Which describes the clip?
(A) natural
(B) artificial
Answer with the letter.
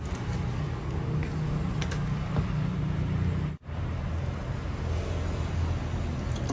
A